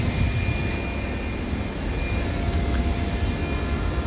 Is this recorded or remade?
recorded